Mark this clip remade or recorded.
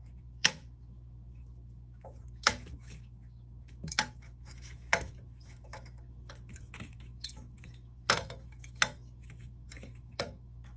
remade